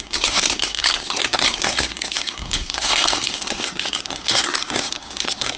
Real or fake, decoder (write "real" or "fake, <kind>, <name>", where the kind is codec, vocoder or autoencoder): fake, codec, SNAC